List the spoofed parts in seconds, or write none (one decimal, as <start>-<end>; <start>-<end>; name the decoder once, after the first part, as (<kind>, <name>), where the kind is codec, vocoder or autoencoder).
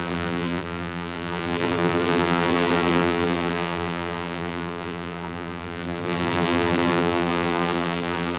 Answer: 0.0-8.4 (vocoder, BigVGAN v2)